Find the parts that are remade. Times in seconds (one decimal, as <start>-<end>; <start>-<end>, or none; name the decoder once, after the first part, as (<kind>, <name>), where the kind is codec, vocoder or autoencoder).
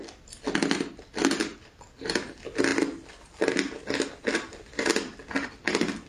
none